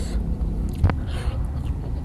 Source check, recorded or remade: recorded